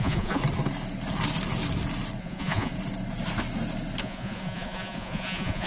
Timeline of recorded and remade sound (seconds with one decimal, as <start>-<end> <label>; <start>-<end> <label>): 0.0-0.4 remade; 0.4-2.2 recorded; 2.2-2.7 remade; 2.7-4.0 recorded; 4.0-5.7 remade

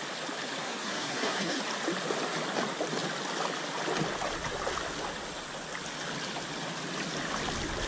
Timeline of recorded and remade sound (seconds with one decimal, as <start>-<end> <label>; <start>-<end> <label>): 0.0-0.6 recorded; 0.6-1.6 remade; 1.6-7.9 recorded

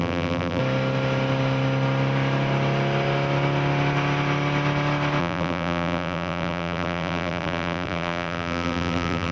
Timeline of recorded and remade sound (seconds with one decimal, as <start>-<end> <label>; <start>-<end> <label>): 0.0-0.6 remade; 0.6-5.2 recorded; 5.2-9.3 remade

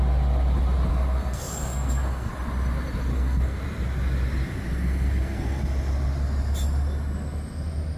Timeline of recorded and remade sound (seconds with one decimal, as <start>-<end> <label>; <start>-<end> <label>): 0.0-0.9 recorded; 0.9-2.3 remade; 2.3-3.1 recorded; 3.1-3.6 remade; 3.6-4.7 recorded; 4.7-5.6 remade; 5.6-8.0 recorded

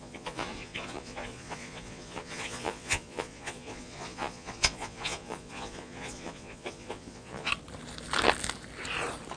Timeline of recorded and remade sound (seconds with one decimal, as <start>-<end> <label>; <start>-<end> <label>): 0.0-7.5 remade; 7.5-9.4 recorded

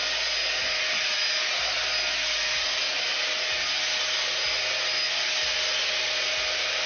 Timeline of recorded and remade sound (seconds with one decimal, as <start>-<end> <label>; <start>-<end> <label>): 0.0-6.9 recorded

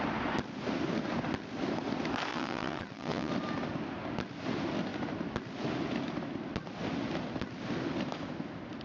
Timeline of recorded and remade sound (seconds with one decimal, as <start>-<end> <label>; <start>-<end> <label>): 0.0-2.3 recorded; 2.3-3.3 remade; 3.3-8.8 recorded

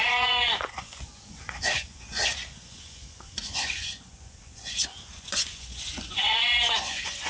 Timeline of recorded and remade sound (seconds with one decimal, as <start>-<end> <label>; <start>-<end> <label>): 0.0-7.3 remade